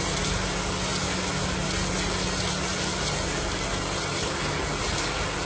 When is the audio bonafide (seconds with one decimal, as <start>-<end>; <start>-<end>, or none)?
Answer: 0.0-5.5